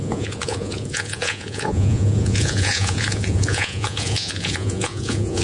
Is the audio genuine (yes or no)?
no